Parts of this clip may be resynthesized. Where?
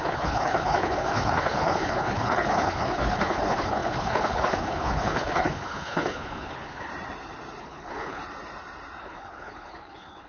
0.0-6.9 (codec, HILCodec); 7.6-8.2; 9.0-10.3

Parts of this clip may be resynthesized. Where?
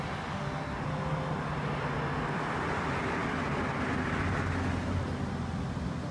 none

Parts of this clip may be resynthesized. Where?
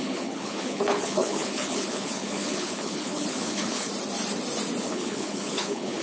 0.0-3.9 (codec, HILCodec); 4.8-6.0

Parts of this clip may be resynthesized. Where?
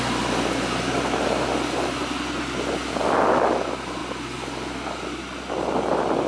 none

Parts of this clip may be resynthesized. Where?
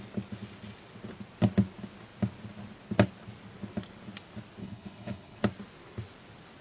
4.6-5.4 (codec, HILCodec)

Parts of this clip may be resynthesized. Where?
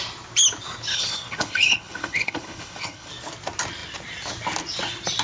0.9-3.1 (codec, HILCodec)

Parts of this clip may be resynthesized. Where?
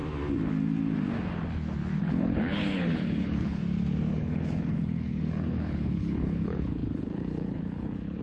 2.0-3.6 (codec, HILCodec); 4.1-8.2